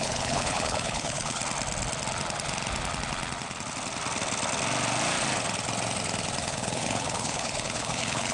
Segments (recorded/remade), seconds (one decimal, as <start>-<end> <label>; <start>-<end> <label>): 0.0-1.4 remade; 1.4-6.4 recorded; 6.4-8.3 remade